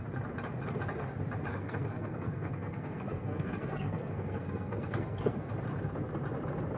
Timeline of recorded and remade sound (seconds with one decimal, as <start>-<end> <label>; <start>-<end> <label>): 0.0-1.5 recorded; 1.5-5.5 remade; 5.5-6.8 recorded